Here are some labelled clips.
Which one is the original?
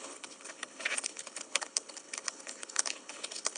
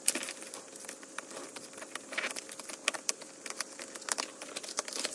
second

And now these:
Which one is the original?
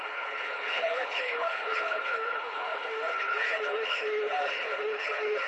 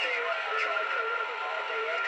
second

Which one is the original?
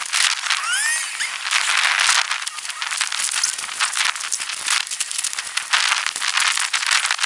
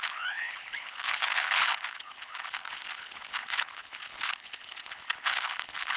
first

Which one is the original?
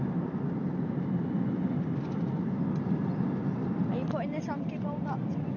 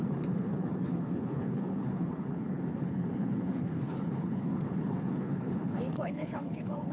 first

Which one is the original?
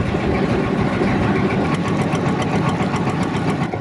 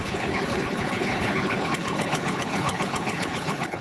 first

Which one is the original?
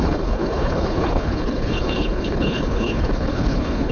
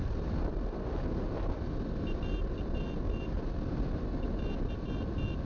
second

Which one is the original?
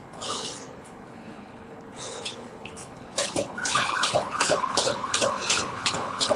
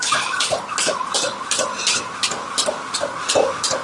second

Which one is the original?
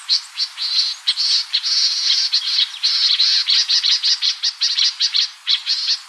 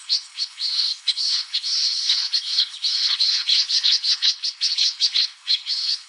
first